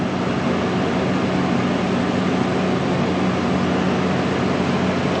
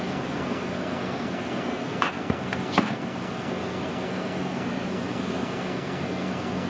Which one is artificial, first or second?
second